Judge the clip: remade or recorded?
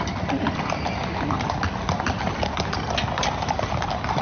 recorded